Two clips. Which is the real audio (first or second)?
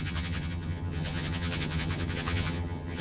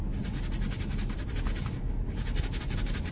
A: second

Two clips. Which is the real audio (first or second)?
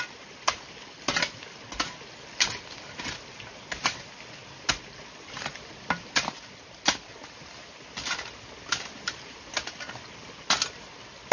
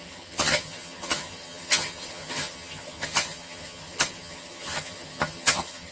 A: first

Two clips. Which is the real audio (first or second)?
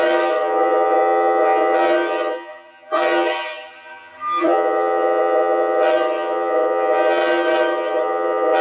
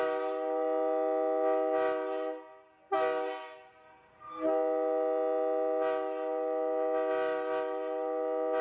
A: second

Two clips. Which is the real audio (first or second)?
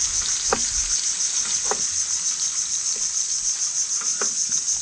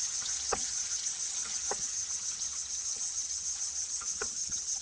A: first